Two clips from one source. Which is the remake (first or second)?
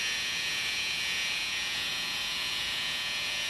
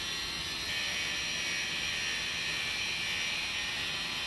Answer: first